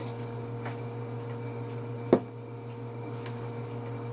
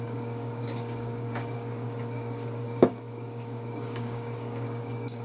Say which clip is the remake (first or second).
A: second